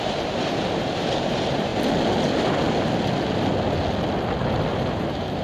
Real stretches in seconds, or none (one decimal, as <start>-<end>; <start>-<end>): 1.7-4.7